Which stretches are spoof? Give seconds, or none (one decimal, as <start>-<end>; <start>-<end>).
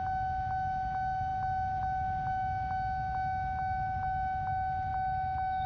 none